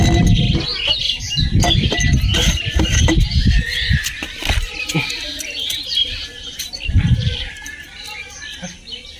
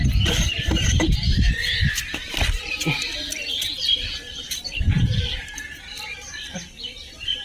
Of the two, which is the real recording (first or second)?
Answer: first